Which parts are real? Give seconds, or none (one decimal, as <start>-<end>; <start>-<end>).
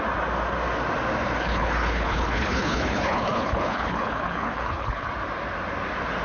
0.0-1.4; 5.1-6.2